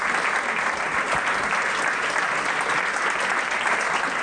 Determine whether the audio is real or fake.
real